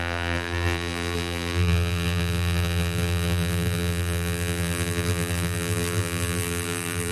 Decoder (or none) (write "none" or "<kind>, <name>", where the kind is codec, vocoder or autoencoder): vocoder, BigVGAN v2